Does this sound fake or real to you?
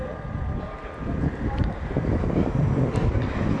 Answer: real